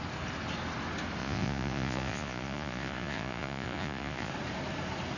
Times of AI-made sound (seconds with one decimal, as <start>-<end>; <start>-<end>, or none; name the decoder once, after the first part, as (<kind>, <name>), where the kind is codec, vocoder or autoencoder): 1.2-4.3 (vocoder, Vocos)